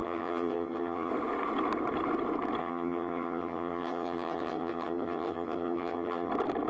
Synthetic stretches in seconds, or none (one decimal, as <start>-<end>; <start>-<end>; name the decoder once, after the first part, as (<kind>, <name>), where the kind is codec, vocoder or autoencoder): 0.0-1.1 (vocoder, HiFi-GAN); 2.6-6.3